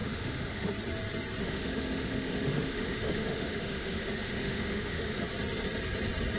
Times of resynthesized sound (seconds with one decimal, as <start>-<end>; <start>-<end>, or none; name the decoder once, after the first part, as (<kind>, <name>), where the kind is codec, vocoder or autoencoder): 0.0-0.7 (autoencoder, DAC-VAE); 1.4-5.2

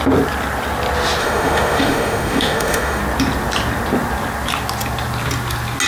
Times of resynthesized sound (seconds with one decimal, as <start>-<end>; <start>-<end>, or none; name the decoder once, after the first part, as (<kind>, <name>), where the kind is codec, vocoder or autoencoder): 1.2-3.0 (autoencoder, DAC-VAE)

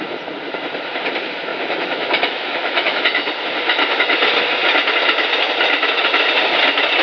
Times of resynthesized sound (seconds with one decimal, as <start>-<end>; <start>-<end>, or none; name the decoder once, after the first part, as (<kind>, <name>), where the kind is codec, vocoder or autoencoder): 1.5-3.0 (autoencoder, DAC-VAE)

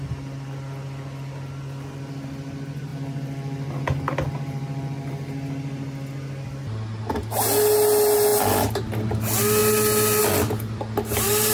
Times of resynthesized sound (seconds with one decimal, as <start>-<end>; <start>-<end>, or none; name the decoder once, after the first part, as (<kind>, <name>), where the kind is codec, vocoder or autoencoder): none

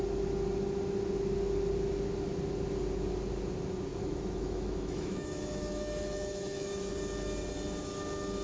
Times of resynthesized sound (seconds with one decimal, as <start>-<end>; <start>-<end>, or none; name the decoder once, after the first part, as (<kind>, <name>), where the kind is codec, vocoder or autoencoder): 3.9-6.9 (autoencoder, DAC-VAE)